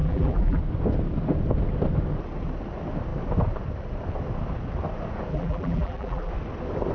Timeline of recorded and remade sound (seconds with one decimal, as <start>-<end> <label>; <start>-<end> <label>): 0.0-0.6 remade; 0.6-5.3 recorded; 5.3-6.3 remade; 6.3-6.9 recorded